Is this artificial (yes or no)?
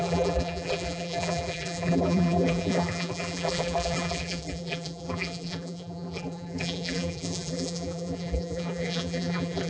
yes